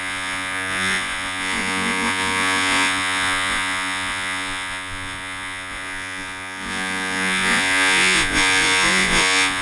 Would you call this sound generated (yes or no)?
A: yes